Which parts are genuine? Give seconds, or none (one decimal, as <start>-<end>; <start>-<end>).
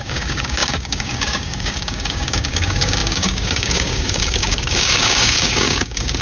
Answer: none